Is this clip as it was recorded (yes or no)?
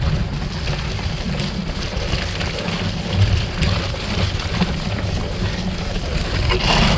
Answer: yes